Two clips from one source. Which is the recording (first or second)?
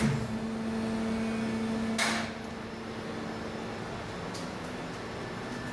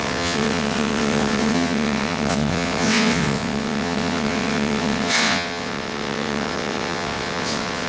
first